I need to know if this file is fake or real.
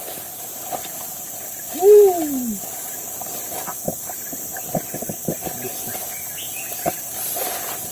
real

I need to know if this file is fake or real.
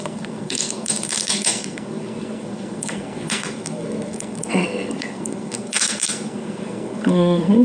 fake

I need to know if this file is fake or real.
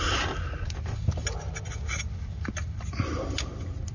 real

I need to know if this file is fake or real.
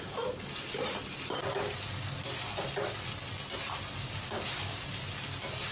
real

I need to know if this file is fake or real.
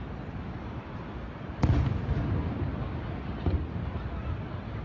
real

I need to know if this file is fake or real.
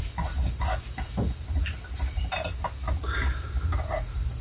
real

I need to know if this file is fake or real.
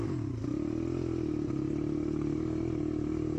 real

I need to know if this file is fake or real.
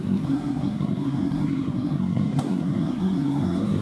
fake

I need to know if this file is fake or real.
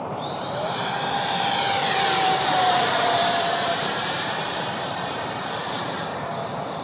fake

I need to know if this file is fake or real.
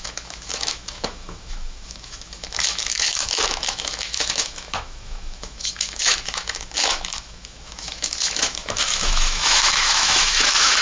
fake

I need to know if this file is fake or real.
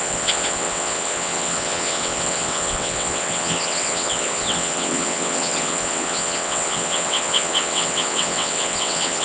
fake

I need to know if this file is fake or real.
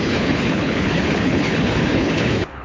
fake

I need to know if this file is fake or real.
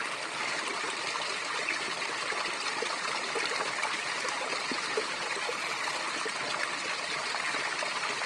real